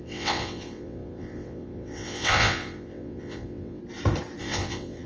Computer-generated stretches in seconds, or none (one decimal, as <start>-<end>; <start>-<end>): 0.0-3.8; 4.4-5.1